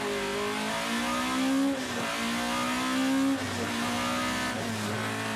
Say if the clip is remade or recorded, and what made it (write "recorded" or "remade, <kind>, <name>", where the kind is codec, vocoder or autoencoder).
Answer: recorded